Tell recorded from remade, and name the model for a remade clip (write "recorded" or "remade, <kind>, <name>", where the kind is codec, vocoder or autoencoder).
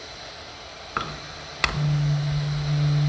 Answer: recorded